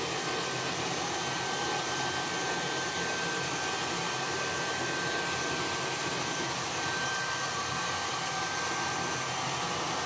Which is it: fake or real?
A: real